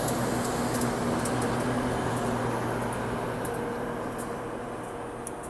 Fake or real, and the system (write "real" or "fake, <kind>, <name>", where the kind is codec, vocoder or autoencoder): real